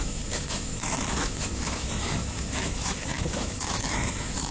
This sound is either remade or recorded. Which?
remade